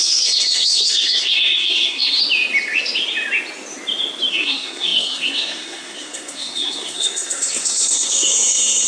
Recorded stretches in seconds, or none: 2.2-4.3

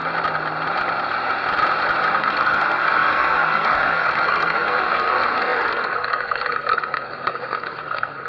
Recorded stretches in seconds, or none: 0.0-2.1

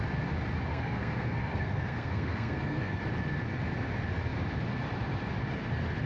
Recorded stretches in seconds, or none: 0.0-0.7; 3.0-6.1

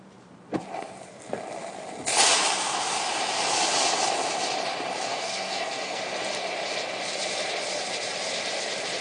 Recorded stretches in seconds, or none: 0.0-5.1; 6.0-9.0

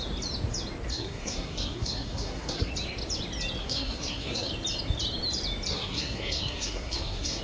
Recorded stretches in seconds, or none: 0.0-0.9; 2.7-3.6; 4.5-5.7